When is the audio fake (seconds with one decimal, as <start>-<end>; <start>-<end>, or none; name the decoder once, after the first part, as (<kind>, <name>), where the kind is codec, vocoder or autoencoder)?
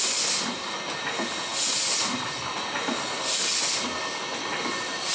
none